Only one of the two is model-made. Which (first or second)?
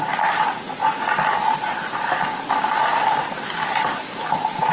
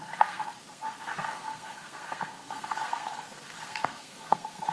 second